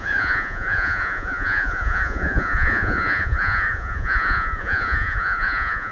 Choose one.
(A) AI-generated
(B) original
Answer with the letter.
A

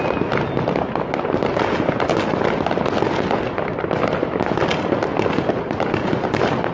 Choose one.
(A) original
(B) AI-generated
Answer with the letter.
A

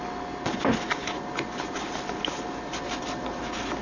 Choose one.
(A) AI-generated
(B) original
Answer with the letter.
B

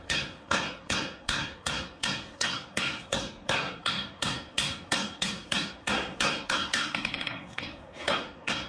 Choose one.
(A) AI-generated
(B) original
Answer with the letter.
A